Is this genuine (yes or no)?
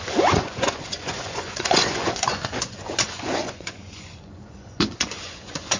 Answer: no